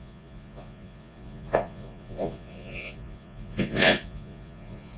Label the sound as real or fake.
fake